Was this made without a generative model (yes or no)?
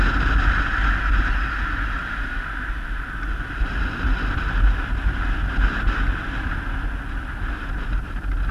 yes